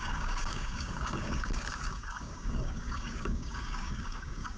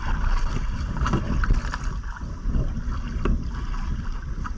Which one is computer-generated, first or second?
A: first